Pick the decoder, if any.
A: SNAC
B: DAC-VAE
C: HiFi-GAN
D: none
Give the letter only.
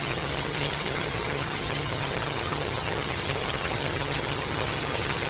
C